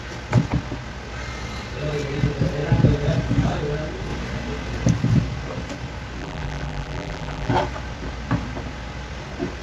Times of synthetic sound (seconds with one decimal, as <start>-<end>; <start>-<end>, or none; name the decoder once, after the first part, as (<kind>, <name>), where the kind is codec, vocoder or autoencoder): 6.2-7.5 (vocoder, BigVGAN v2)